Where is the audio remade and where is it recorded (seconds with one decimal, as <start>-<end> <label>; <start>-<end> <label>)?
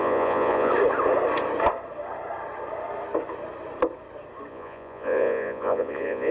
0.0-0.7 remade; 0.7-4.5 recorded; 4.5-6.3 remade